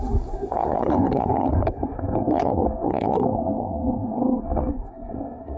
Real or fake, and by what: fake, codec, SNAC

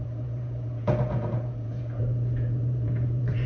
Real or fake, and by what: fake, vocoder, Vocos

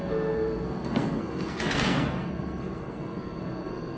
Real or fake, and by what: fake, codec, SNAC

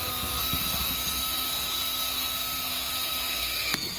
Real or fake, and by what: fake, codec, SNAC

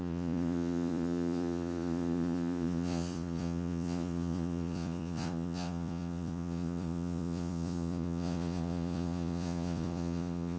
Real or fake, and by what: fake, vocoder, Vocos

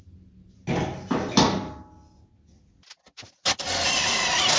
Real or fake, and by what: real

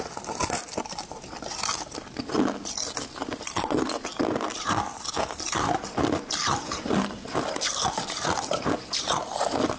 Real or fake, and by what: fake, vocoder, BigVGAN v2